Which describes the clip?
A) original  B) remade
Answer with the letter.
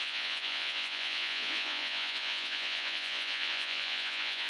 B